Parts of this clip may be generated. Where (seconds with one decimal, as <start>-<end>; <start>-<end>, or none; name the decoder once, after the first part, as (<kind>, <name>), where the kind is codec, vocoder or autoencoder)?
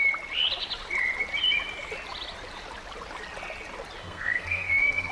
4.0-5.1 (codec, SNAC)